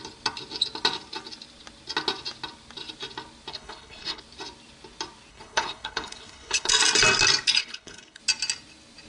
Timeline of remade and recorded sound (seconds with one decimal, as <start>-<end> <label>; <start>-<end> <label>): 0.0-3.5 recorded; 3.5-4.2 remade; 4.2-5.3 recorded; 5.3-6.7 remade; 6.7-7.6 recorded; 7.6-8.2 remade; 8.2-9.1 recorded